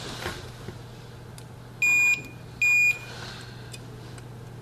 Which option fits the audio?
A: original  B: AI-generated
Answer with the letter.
A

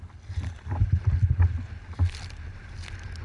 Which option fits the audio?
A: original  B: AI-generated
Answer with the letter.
A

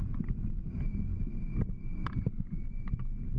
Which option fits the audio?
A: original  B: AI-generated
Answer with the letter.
A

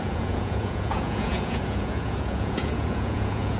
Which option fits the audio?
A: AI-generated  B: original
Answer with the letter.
A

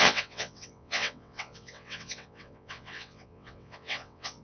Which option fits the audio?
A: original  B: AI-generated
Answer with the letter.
B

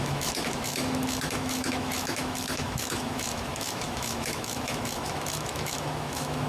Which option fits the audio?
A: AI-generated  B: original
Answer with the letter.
A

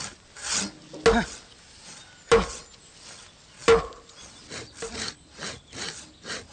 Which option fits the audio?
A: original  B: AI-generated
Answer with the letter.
A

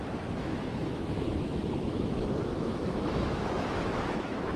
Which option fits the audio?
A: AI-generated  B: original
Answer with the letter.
A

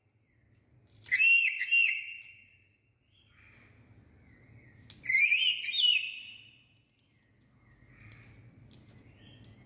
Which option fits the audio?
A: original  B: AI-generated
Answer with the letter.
A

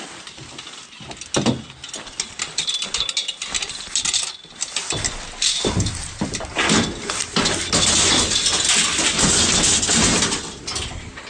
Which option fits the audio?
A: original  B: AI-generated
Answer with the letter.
A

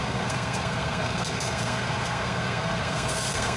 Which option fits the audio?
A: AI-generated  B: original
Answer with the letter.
A